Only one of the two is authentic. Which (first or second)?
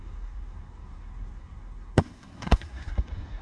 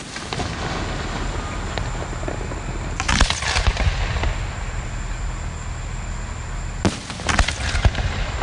second